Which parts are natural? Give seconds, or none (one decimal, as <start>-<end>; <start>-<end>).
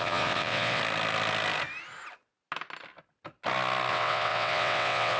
0.8-3.9